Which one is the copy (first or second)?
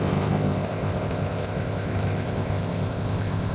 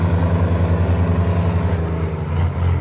first